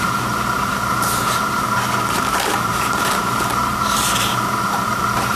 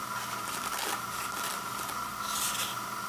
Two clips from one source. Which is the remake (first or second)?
first